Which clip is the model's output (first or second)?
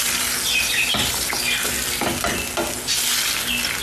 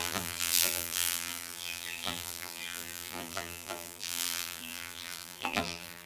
second